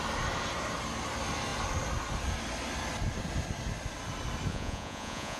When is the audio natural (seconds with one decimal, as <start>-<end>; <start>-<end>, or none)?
0.0-4.5